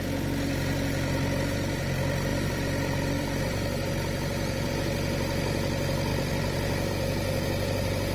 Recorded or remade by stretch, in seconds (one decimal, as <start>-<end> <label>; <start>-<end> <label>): 0.0-2.3 recorded; 2.3-4.7 remade; 4.7-6.1 recorded; 6.1-6.9 remade; 6.9-8.1 recorded